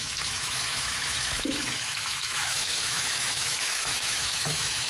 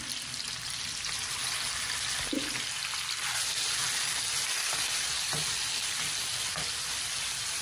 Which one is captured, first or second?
second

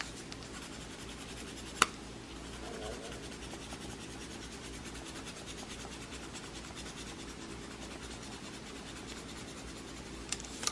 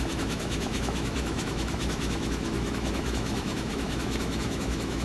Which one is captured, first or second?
first